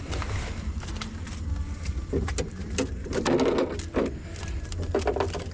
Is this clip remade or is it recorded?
recorded